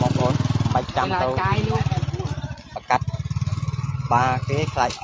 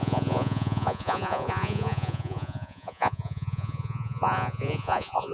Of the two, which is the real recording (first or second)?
first